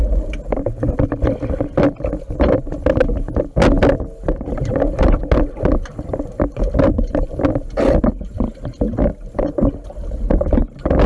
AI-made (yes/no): no